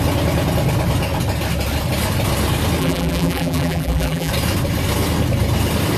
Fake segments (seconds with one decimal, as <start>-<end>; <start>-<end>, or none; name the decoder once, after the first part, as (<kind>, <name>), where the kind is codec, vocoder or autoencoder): 2.8-4.3 (vocoder, BigVGAN v2)